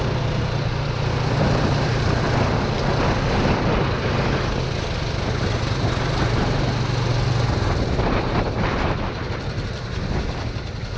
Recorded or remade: recorded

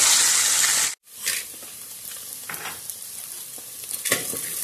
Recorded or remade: recorded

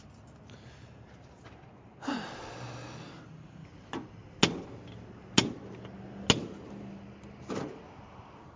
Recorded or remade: recorded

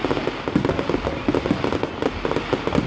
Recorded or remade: recorded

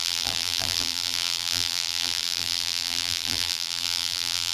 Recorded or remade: remade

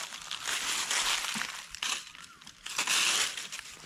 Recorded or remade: recorded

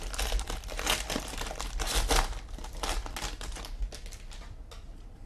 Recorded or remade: recorded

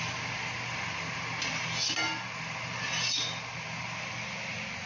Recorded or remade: recorded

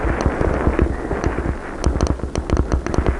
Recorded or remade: recorded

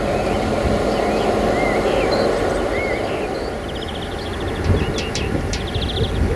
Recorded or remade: recorded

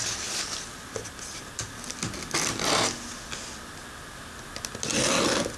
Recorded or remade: recorded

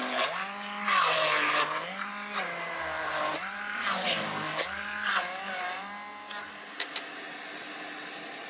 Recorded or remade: recorded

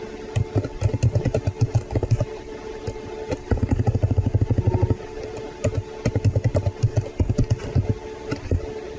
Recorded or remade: recorded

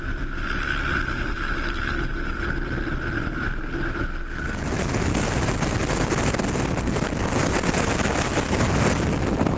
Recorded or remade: recorded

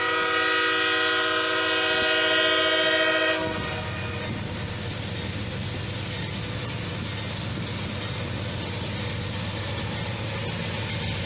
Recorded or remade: recorded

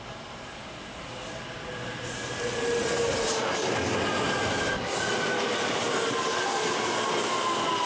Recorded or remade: recorded